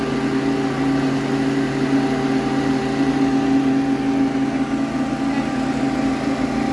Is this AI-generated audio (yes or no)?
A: no